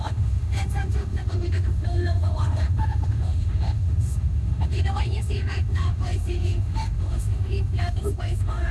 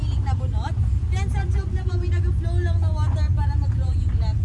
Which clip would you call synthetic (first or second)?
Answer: first